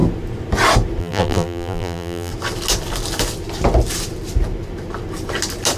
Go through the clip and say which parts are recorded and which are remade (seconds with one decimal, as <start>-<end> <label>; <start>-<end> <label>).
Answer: 0.0-1.0 recorded; 1.0-2.3 remade; 2.3-5.8 recorded